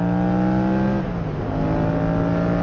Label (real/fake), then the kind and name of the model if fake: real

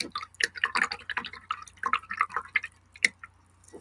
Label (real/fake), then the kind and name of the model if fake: real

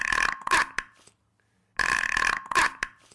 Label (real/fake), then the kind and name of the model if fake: real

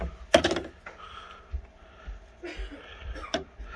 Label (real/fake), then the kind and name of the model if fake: real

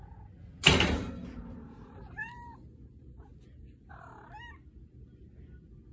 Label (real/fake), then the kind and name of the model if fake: real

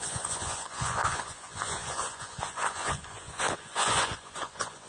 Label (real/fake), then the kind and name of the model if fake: fake, vocoder, Vocos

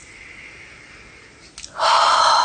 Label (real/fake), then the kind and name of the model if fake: real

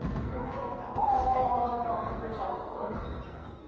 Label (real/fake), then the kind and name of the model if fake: fake, codec, SNAC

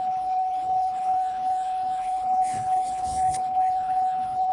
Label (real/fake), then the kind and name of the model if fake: fake, codec, HILCodec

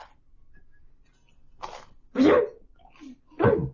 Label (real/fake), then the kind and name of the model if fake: real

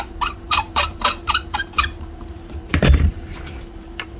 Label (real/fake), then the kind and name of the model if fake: fake, vocoder, BigVGAN v2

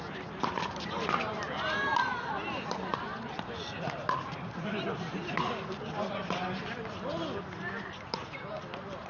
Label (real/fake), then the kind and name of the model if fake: fake, vocoder, BigVGAN v2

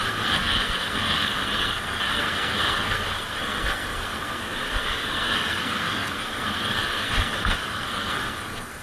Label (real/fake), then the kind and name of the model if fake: fake, codec, SNAC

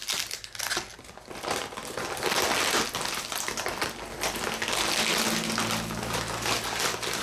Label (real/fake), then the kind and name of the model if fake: real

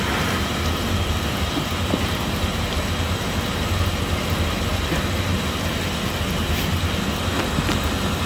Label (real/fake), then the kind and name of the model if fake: real